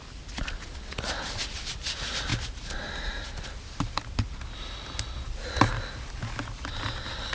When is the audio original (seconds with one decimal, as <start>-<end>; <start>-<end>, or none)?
0.0-7.3